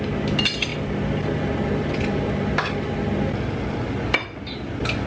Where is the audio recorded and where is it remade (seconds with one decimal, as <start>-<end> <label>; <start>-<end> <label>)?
0.0-5.1 recorded